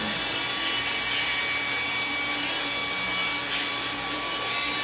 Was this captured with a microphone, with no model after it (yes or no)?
yes